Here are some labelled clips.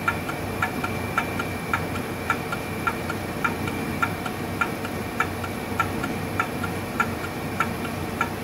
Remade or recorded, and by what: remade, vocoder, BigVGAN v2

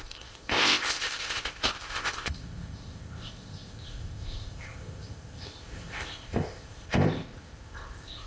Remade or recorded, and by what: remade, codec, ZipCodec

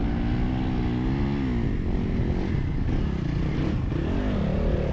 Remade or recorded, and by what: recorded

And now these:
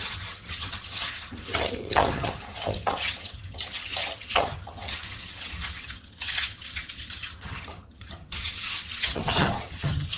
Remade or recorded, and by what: remade, vocoder, HiFi-GAN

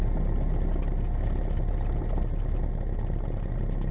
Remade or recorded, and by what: recorded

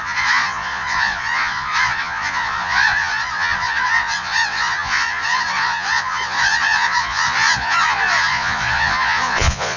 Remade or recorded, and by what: remade, vocoder, Vocos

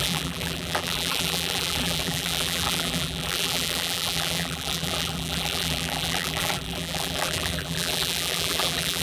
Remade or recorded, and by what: remade, vocoder, BigVGAN v2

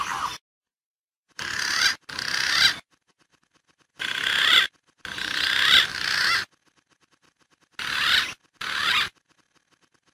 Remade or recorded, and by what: recorded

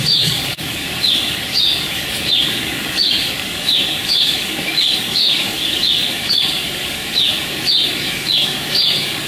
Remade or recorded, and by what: remade, codec, DAC